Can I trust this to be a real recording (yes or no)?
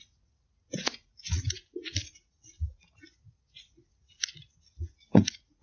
no